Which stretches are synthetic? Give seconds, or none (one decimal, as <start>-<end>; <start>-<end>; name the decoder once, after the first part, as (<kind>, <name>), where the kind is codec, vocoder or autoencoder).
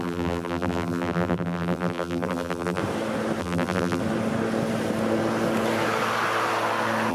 0.0-2.8 (vocoder, BigVGAN v2); 3.4-4.0